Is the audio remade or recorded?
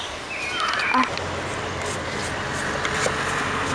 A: recorded